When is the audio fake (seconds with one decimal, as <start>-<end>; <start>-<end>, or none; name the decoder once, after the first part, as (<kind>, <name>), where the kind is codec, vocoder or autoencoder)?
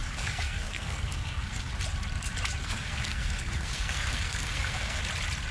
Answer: 0.0-1.7 (codec, SNAC); 2.6-5.0